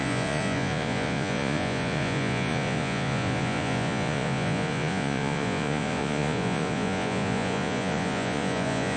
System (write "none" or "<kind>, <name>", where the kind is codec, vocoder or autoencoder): vocoder, Vocos